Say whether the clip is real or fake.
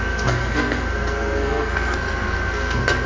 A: fake